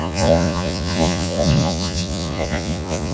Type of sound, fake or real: fake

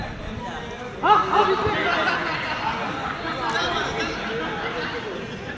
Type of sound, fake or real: real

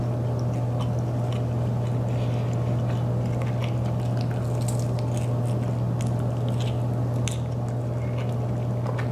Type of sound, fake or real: real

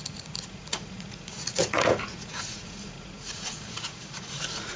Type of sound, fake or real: fake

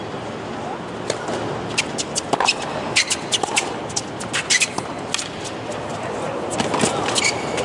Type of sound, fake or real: real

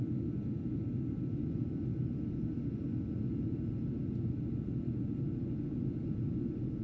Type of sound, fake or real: real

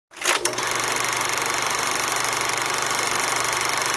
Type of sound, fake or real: real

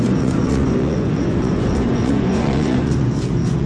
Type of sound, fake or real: fake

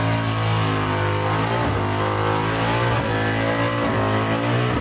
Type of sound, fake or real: real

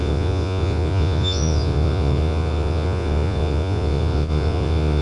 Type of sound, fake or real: fake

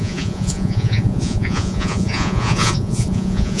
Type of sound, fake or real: fake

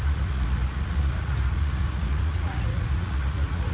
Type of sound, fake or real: fake